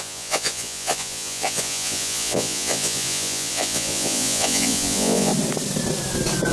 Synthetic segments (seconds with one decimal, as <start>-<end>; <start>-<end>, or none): 0.0-5.3